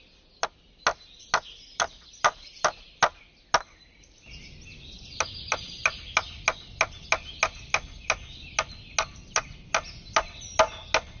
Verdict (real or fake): real